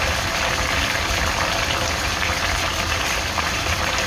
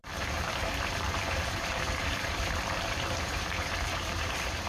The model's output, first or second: second